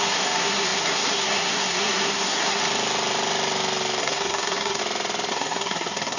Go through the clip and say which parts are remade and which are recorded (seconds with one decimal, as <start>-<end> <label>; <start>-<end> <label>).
0.0-2.6 remade; 2.6-4.0 recorded; 4.0-4.8 remade; 4.8-5.3 recorded; 5.3-6.2 remade